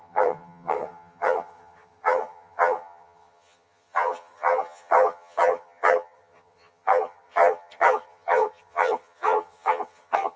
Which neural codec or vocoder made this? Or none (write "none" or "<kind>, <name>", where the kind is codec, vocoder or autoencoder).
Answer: vocoder, HiFi-GAN